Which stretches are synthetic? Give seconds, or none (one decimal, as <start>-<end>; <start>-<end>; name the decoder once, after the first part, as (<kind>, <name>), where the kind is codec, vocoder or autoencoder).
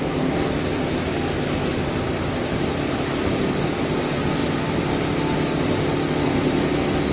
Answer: 1.6-2.1 (vocoder, BigVGAN v2); 4.4-4.9